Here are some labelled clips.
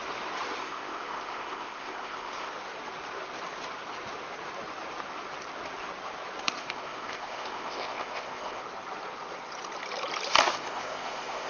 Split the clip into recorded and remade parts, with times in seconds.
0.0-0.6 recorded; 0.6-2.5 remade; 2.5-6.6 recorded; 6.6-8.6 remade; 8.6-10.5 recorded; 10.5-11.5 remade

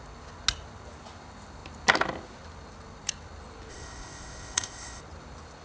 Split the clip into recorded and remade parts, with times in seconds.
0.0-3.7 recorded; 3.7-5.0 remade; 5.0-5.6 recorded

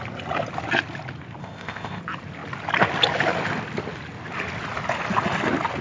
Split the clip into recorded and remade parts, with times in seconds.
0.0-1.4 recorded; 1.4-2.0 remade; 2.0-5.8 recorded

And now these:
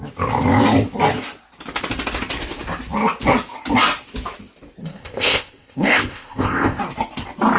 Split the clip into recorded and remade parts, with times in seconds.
0.0-4.8 recorded; 4.8-6.8 remade; 6.8-7.6 recorded